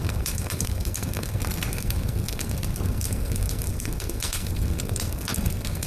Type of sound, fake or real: fake